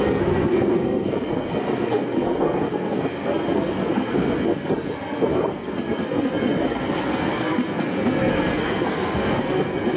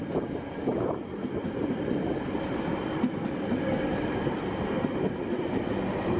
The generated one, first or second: first